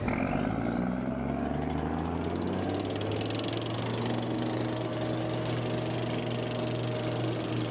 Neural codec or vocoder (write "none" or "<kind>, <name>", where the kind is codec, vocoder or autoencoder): none